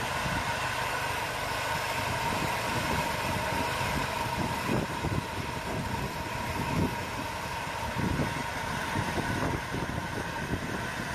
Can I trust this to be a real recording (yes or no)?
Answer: no